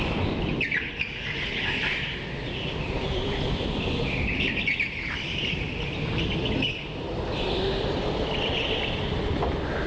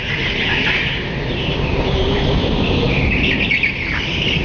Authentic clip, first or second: second